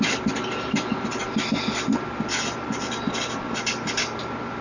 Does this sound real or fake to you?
fake